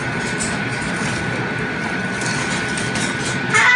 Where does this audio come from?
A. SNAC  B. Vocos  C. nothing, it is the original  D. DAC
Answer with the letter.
C